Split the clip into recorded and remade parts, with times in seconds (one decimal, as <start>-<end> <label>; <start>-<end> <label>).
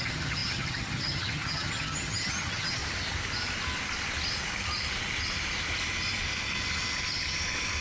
0.0-2.8 remade; 2.8-7.8 recorded